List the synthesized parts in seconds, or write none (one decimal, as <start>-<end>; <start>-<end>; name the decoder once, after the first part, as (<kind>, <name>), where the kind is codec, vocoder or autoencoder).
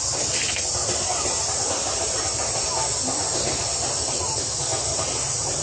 0.8-2.5 (vocoder, BigVGAN v2); 4.9-5.6